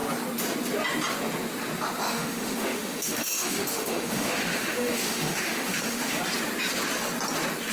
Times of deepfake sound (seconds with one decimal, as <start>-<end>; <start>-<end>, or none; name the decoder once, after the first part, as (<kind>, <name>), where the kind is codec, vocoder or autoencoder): 2.0-6.2 (autoencoder, DAC-VAE)